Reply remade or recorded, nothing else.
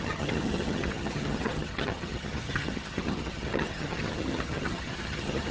remade